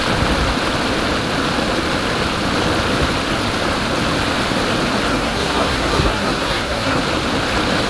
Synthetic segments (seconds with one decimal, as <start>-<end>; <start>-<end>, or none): 5.1-7.0

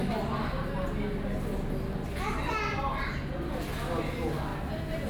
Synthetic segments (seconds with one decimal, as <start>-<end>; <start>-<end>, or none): 4.5-5.1

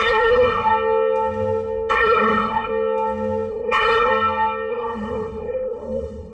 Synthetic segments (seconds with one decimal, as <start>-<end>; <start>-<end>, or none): 0.0-0.7; 1.9-2.7; 3.5-4.1; 4.7-6.3

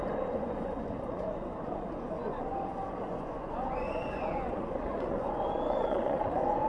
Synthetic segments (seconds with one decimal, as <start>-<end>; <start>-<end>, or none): 0.0-6.7